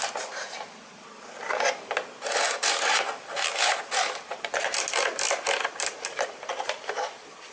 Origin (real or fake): real